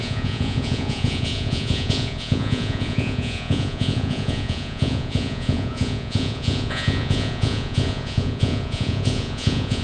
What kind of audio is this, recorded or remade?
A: remade